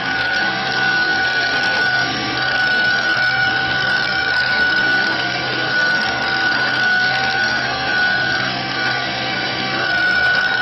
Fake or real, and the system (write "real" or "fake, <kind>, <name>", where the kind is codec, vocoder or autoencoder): fake, codec, SNAC